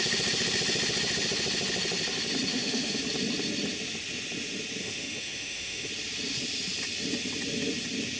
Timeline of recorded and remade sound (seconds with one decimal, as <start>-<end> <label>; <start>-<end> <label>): 0.0-2.5 recorded; 2.5-3.0 remade; 3.0-4.8 recorded; 4.8-5.9 remade; 5.9-8.2 recorded